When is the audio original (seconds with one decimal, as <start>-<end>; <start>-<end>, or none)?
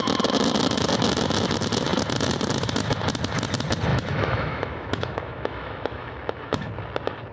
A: 0.0-3.9; 6.7-7.3